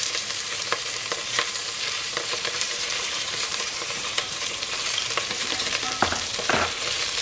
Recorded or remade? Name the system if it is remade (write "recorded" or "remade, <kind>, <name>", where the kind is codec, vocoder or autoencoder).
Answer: remade, vocoder, BigVGAN v2